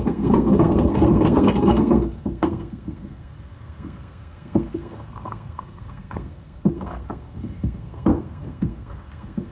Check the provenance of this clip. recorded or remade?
remade